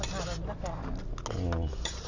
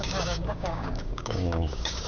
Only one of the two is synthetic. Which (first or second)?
second